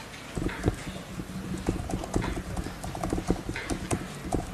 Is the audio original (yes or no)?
yes